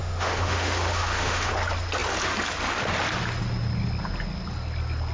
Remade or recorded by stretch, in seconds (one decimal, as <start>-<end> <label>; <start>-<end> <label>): 0.0-1.5 remade; 1.5-5.1 recorded